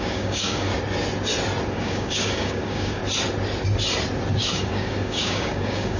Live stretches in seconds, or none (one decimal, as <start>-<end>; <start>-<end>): 0.7-1.7; 3.0-4.4